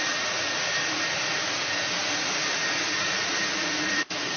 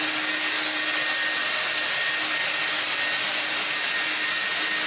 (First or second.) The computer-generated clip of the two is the first